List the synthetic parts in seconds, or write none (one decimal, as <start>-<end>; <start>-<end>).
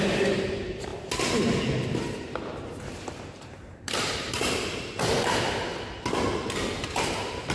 0.0-0.9; 3.3-5.7; 6.8-7.5